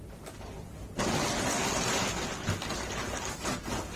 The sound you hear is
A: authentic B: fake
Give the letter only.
A